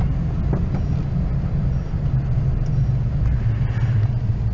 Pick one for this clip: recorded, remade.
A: recorded